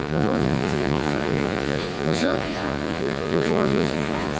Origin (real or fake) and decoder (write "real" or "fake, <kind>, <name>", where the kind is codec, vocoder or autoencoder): fake, vocoder, Vocos